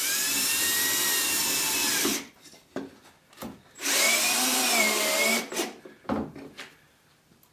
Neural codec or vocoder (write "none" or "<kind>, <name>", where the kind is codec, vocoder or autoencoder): vocoder, BigVGAN v2